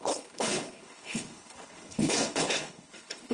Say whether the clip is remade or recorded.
remade